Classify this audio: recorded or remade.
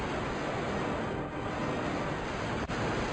recorded